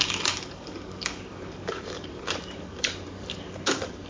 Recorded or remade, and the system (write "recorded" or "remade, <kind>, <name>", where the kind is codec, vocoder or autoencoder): remade, codec, DAC